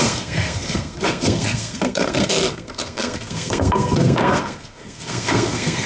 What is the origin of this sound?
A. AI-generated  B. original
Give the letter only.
A